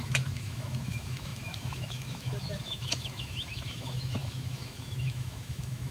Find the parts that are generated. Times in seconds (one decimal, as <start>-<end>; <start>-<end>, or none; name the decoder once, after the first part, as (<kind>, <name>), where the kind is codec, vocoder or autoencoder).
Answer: 0.0-5.9 (autoencoder, DAC-VAE)

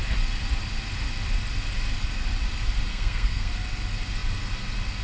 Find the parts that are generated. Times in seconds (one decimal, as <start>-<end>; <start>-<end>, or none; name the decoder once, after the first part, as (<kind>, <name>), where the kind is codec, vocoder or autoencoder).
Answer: 2.9-3.5 (codec, SNAC)

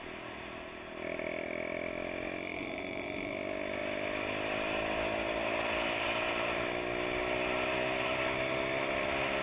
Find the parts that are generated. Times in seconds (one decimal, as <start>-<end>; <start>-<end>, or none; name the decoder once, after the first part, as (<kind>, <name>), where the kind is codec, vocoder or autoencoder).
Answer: 2.5-3.3 (vocoder, BigVGAN v2)